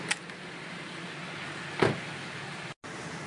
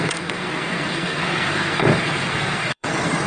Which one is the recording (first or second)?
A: first